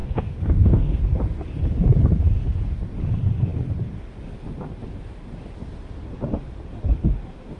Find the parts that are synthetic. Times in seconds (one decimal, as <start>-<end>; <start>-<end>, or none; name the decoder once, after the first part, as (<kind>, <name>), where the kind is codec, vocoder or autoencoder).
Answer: 0.0-1.0 (codec, SNAC)